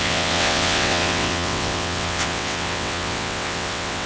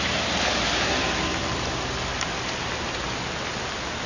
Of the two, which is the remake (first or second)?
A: first